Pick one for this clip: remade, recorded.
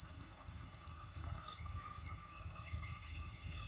remade